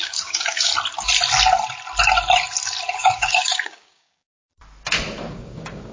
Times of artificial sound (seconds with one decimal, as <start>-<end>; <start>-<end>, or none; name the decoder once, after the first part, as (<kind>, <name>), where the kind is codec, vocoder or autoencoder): 0.0-0.7 (codec, DAC); 3.0-4.5; 5.3-5.9